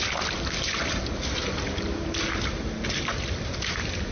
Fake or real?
real